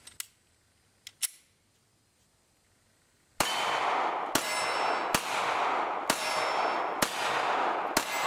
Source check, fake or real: real